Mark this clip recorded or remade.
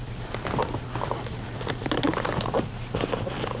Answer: remade